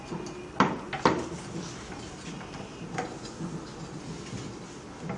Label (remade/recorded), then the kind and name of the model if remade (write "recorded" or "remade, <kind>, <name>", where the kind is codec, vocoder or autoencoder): recorded